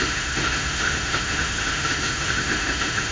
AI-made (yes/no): yes